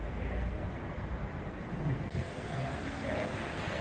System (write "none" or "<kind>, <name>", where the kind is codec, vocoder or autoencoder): codec, SNAC